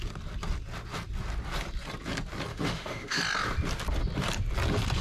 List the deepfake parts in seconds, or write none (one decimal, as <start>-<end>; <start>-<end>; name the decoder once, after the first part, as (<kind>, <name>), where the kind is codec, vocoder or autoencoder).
2.5-3.2 (autoencoder, DAC-VAE)